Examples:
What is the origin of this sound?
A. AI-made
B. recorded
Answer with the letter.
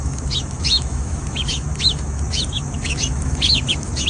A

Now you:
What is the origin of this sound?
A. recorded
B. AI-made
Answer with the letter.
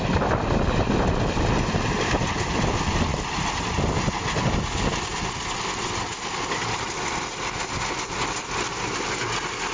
A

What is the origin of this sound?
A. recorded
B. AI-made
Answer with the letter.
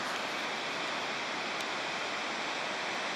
A